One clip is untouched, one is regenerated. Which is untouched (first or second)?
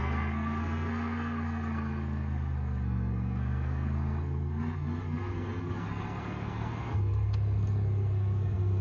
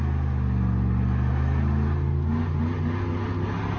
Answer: second